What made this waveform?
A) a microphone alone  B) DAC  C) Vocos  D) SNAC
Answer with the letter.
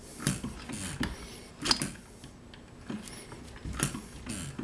A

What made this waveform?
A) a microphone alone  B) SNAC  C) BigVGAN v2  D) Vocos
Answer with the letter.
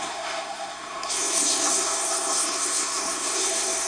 B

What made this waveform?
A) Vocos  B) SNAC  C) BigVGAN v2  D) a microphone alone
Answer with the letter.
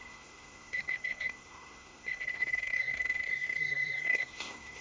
B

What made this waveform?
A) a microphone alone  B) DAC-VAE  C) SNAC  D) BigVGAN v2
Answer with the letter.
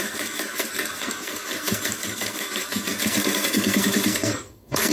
C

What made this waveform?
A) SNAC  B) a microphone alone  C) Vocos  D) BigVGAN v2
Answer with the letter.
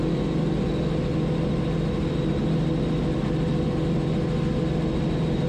B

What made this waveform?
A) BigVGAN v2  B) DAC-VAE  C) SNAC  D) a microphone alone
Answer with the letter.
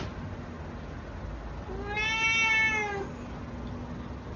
D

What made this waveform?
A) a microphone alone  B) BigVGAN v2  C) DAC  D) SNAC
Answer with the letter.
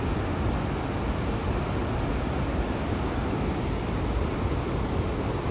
A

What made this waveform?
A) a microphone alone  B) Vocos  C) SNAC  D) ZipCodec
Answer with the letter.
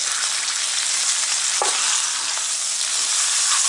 A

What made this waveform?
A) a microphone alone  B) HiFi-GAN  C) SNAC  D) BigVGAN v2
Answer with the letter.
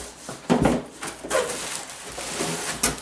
A